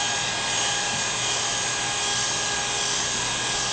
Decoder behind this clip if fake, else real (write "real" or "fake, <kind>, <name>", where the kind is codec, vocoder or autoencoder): real